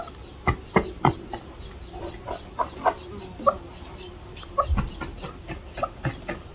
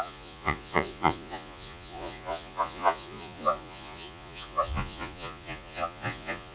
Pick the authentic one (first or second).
first